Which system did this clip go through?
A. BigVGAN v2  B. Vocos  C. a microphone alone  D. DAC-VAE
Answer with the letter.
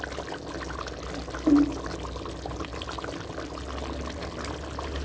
C